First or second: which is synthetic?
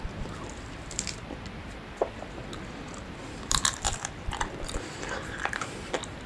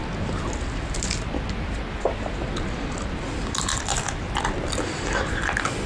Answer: first